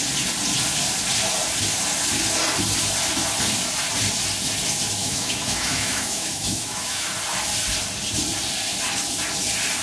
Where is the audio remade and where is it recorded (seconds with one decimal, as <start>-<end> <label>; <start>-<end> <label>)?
0.0-5.0 recorded; 5.0-7.1 remade; 7.1-9.8 recorded

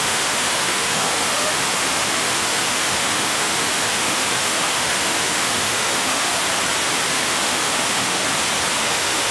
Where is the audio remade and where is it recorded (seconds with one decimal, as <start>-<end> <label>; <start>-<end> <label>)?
0.0-6.3 remade; 6.3-7.1 recorded; 7.1-8.2 remade; 8.2-8.8 recorded; 8.8-9.3 remade

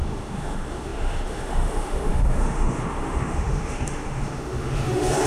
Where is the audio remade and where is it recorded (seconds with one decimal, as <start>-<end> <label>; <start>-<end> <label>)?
0.0-5.3 remade

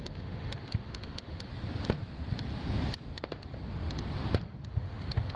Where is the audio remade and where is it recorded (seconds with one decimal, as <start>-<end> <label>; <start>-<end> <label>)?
0.0-1.5 remade; 1.5-4.7 recorded; 4.7-5.4 remade

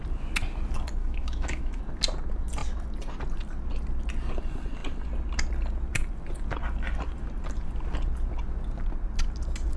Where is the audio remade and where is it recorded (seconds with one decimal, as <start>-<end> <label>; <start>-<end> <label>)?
0.0-1.0 recorded; 1.0-1.8 remade; 1.8-9.8 recorded

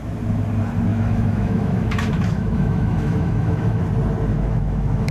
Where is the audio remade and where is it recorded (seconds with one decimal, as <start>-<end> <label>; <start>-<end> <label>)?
0.0-0.9 recorded; 0.9-3.8 remade; 3.8-4.3 recorded; 4.3-5.1 remade

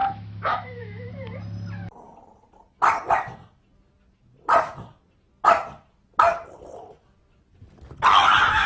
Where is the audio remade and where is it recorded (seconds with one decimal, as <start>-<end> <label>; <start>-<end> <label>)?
0.0-1.1 remade; 1.1-8.7 recorded

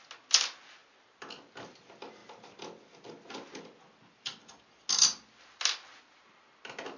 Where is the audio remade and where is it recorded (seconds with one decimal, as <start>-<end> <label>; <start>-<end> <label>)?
0.0-7.0 recorded